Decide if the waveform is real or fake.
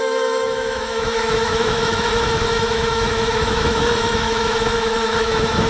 fake